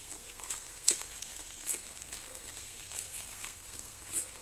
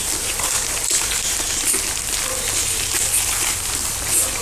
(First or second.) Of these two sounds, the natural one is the second